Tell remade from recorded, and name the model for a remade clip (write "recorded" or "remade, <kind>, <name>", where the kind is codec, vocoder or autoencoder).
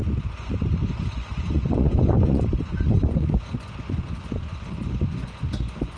remade, vocoder, Vocos